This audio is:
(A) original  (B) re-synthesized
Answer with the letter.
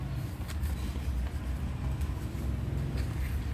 A